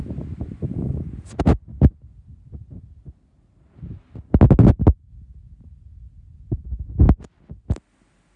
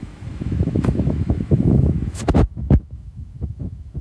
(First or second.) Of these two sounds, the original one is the first